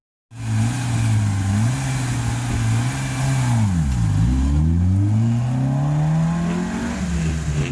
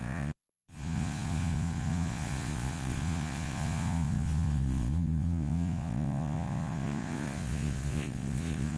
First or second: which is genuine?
first